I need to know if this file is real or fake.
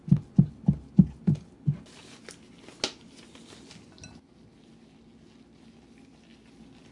real